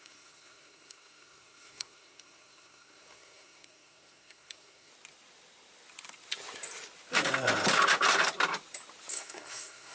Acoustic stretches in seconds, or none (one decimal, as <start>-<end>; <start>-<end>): 4.9-9.1